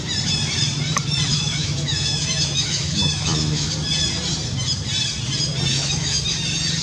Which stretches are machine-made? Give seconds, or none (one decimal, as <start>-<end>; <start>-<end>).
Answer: 1.3-3.7; 5.7-6.2